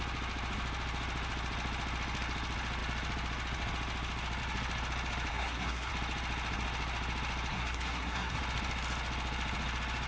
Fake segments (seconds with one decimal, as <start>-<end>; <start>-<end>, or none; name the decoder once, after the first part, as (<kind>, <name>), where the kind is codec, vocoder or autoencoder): 5.3-5.9 (codec, SNAC); 7.5-8.4